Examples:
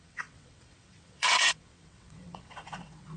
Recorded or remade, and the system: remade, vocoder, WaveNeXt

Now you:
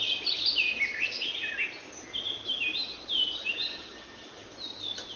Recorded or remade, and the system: recorded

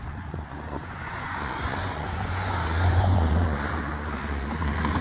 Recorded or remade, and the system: remade, vocoder, Vocos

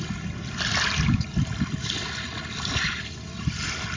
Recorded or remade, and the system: recorded